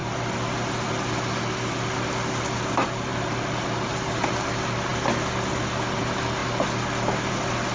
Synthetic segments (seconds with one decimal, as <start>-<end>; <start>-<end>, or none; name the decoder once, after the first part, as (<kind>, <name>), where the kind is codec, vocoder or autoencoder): 3.1-4.3 (vocoder, BigVGAN v2)